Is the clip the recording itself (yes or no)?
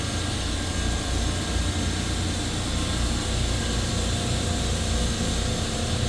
yes